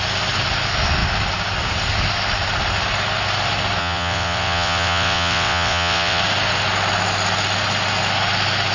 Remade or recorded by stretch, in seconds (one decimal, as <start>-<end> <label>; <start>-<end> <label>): 0.0-3.8 recorded; 3.8-6.2 remade; 6.2-8.7 recorded